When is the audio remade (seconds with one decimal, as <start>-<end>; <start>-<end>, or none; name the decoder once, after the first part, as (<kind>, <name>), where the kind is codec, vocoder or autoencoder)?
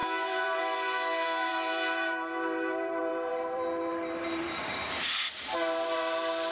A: 0.0-6.5 (vocoder, BigVGAN v2)